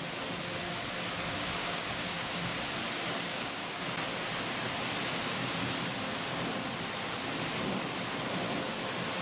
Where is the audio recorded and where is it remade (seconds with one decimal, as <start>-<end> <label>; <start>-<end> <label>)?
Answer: 0.0-1.6 recorded; 1.6-2.3 remade; 2.3-3.3 recorded; 3.3-3.8 remade; 3.8-9.2 recorded